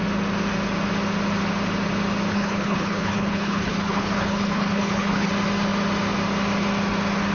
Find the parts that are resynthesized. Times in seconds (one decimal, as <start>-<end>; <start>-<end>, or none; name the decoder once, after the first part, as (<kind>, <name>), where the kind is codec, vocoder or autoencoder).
2.3-5.3 (codec, HILCodec)